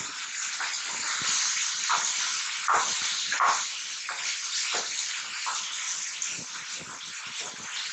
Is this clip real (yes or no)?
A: yes